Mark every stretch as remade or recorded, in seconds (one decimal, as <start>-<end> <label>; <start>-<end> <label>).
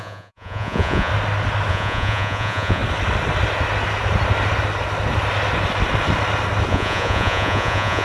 0.0-1.1 remade; 1.1-1.7 recorded; 1.7-2.8 remade; 2.8-6.7 recorded; 6.7-8.0 remade